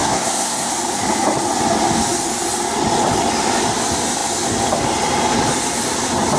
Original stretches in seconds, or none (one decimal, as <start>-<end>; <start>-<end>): 0.7-6.4